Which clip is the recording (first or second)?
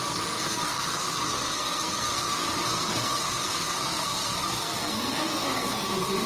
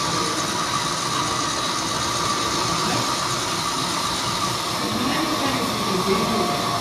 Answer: second